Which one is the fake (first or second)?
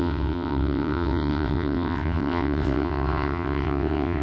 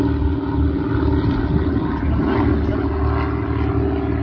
first